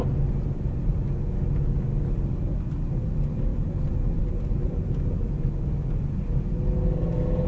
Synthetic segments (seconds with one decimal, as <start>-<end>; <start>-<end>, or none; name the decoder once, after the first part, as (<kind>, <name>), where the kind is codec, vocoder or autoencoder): none